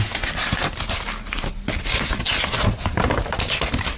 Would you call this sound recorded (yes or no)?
yes